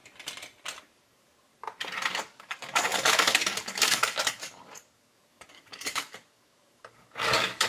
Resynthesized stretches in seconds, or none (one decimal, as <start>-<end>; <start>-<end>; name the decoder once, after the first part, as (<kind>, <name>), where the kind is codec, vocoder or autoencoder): 0.8-1.5 (codec, DAC); 2.1-7.7